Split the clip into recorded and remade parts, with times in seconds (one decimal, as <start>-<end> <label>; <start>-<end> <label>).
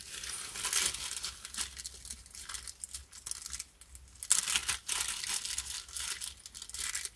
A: 0.0-7.2 recorded